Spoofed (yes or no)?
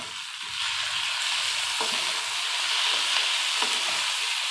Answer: no